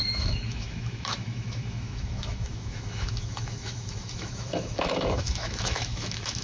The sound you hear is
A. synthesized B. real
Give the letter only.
A